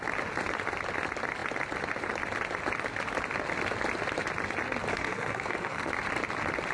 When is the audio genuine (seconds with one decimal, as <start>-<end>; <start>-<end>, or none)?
0.0-4.9; 5.9-6.7